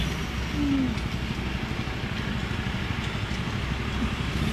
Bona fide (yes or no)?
yes